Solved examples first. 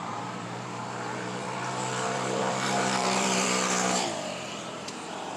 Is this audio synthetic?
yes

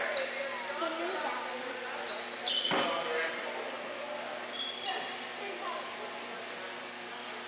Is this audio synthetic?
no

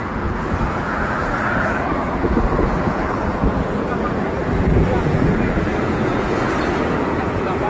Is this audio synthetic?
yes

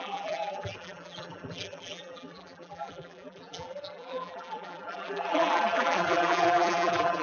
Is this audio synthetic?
yes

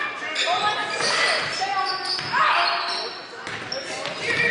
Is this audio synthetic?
no